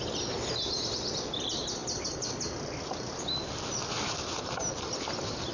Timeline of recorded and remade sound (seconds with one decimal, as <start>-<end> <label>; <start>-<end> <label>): 0.0-5.5 recorded